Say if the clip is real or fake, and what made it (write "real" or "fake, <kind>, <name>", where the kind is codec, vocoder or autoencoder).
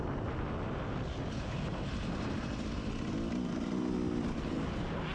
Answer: real